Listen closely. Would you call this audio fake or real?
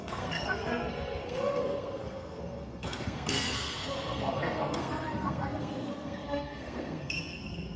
fake